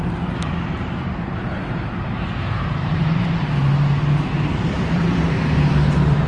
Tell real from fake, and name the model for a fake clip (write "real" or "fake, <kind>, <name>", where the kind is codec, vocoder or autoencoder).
fake, vocoder, BigVGAN v2